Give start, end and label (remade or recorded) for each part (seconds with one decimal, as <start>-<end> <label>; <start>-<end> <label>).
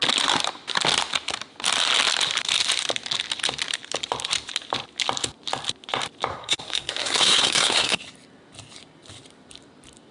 0.0-6.3 recorded; 6.3-8.0 remade; 8.0-10.1 recorded